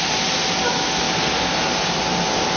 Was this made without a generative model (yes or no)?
yes